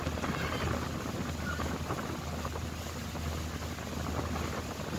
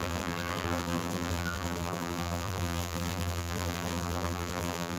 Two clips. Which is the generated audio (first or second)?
second